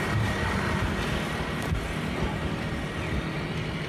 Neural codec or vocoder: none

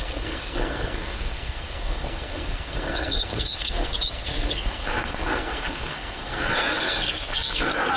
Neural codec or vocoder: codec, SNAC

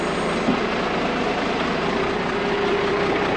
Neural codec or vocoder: none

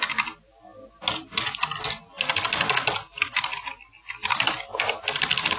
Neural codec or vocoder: none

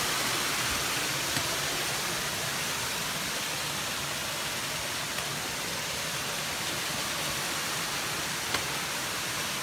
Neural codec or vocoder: none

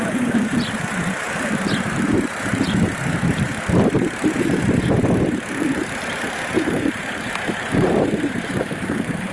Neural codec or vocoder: vocoder, BigVGAN v2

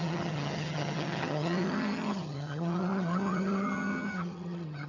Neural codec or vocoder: vocoder, HiFi-GAN